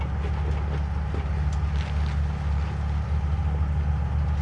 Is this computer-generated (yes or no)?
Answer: no